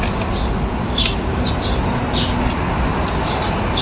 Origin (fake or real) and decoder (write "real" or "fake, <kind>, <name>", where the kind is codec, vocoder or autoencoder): real